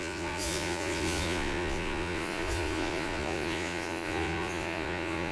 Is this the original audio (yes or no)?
no